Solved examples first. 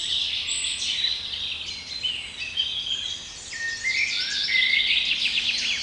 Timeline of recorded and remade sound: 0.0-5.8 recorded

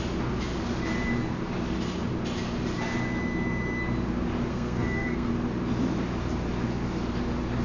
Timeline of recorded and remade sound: 0.0-4.5 recorded; 4.5-5.3 remade; 5.3-7.6 recorded